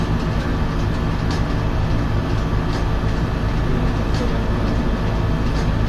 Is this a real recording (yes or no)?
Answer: yes